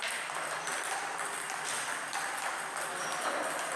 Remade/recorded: recorded